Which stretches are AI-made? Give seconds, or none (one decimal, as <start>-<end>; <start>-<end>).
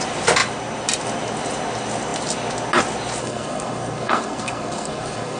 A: 3.2-5.4